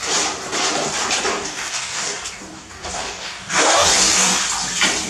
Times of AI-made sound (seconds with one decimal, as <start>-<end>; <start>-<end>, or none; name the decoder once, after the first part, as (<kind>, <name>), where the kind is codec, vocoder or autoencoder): 1.3-4.4 (codec, DAC)